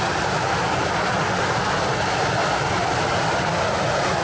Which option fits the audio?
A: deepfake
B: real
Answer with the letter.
B